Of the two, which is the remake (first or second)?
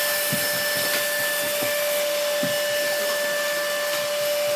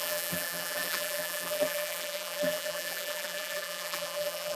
second